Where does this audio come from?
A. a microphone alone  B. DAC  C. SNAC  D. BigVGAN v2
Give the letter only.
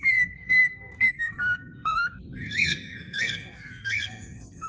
C